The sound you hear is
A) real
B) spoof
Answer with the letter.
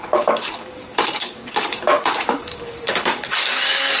B